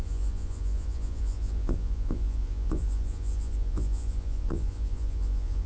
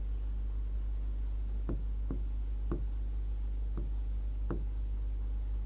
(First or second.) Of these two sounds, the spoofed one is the first